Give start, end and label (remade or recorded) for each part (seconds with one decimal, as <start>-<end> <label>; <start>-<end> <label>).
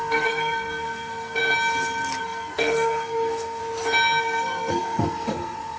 0.0-1.4 remade; 1.4-2.2 recorded; 2.2-3.6 remade; 3.6-4.2 recorded; 4.2-5.8 remade